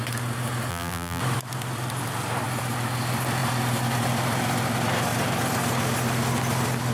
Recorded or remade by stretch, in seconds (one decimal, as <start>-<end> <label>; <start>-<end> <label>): 0.0-0.7 recorded; 0.7-1.2 remade; 1.2-6.9 recorded

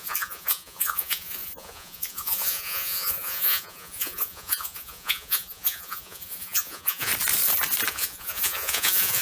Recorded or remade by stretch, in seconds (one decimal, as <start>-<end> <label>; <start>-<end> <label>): 0.0-7.1 remade; 7.1-7.9 recorded; 7.9-9.2 remade

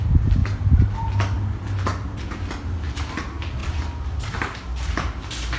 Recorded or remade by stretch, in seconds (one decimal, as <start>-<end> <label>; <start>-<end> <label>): 0.0-5.6 recorded

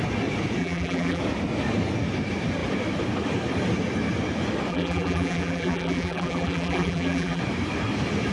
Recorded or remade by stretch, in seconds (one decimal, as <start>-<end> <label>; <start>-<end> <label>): 0.0-0.6 recorded; 0.6-1.2 remade; 1.2-4.7 recorded; 4.7-7.4 remade; 7.4-8.3 recorded

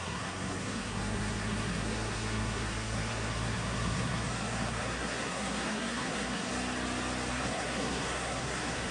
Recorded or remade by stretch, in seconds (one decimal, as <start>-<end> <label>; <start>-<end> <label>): 0.0-6.5 remade; 6.5-7.3 recorded; 7.3-8.9 remade